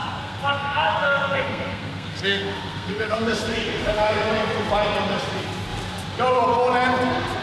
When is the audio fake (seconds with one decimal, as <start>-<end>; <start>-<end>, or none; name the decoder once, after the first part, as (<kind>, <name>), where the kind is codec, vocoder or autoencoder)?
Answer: 0.0-4.3 (codec, SNAC)